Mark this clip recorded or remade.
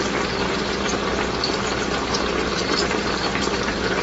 recorded